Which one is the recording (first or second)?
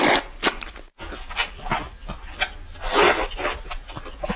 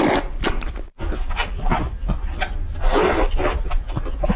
first